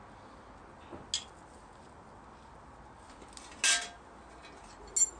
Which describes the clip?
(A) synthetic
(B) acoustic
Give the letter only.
B